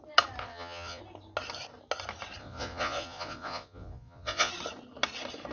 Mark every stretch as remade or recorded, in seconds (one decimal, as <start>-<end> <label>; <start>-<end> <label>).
0.0-0.4 recorded; 0.4-1.0 remade; 1.0-2.4 recorded; 2.4-4.5 remade; 4.5-5.5 recorded